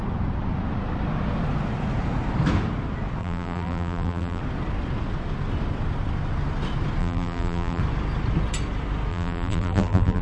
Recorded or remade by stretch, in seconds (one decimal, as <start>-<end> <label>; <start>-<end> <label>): 0.0-3.2 recorded; 3.2-4.4 remade; 4.4-7.0 recorded; 7.0-7.8 remade; 7.8-9.1 recorded; 9.1-10.2 remade